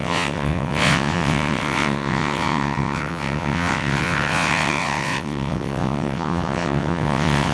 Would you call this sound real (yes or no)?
no